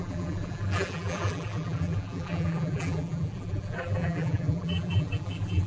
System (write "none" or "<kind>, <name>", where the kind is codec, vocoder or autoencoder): vocoder, BigVGAN v2